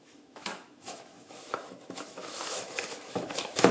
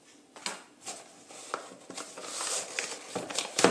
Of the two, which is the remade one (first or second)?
first